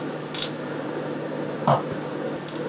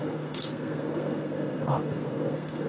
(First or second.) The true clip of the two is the first